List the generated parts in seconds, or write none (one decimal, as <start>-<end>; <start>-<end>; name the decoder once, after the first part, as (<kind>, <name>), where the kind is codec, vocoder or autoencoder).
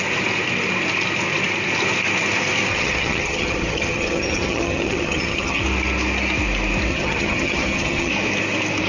2.7-5.6 (vocoder, HiFi-GAN); 6.9-8.1